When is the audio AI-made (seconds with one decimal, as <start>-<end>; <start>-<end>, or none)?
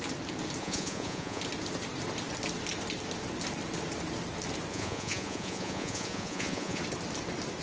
0.6-1.4; 4.7-6.8